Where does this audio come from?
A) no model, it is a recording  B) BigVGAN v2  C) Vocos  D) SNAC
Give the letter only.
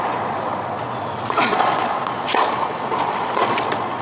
C